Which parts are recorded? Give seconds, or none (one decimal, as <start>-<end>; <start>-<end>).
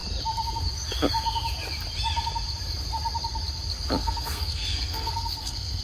0.0-4.0